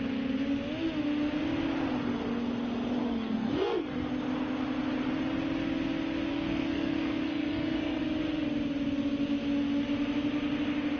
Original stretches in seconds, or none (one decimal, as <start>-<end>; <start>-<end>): 0.0-3.0; 4.1-6.3; 8.0-11.0